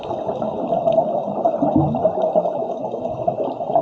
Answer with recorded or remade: recorded